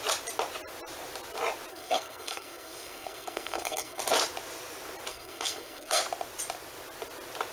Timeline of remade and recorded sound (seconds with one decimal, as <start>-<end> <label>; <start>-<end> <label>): 0.0-1.7 recorded; 1.7-4.0 remade; 4.0-5.1 recorded; 5.1-6.0 remade; 6.0-7.5 recorded

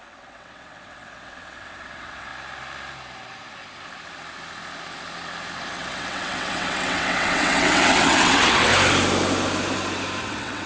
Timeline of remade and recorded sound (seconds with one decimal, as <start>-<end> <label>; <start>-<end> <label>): 0.0-2.3 remade; 2.3-5.7 recorded; 5.7-8.7 remade; 8.7-10.2 recorded; 10.2-10.7 remade

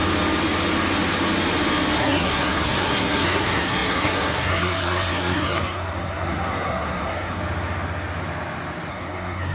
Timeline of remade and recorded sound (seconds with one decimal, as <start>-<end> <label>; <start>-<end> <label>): 0.0-2.0 recorded; 2.0-7.4 remade; 7.4-8.9 recorded; 8.9-9.5 remade

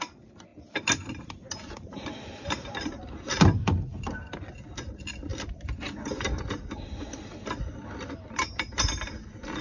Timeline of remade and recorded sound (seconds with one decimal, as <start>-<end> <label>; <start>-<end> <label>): 0.0-9.6 recorded

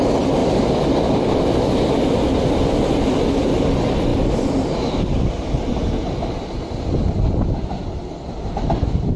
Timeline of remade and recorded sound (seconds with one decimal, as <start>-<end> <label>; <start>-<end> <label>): 0.0-0.4 recorded; 0.4-3.2 remade; 3.2-9.2 recorded

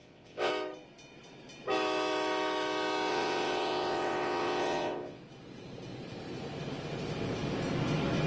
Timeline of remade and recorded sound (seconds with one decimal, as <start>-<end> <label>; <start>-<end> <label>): 0.0-0.5 remade; 0.5-3.1 recorded; 3.1-5.2 remade; 5.2-8.3 recorded